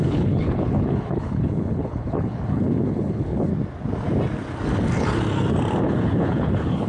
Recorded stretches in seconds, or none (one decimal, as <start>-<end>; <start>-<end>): 3.5-5.8